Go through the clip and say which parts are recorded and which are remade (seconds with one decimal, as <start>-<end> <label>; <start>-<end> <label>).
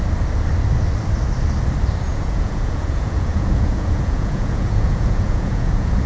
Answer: 0.0-2.1 recorded; 2.1-6.1 remade